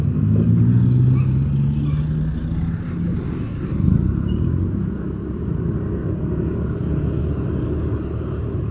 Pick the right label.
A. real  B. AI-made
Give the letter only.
A